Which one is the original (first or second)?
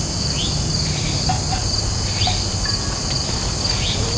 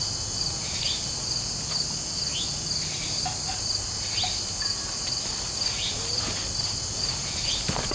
second